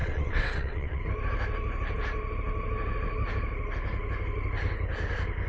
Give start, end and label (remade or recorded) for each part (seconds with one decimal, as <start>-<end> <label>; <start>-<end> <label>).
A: 0.0-1.0 remade; 1.0-5.5 recorded